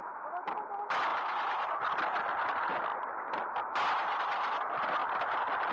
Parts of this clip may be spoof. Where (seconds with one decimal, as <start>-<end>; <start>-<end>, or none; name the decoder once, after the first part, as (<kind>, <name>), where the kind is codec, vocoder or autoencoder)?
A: none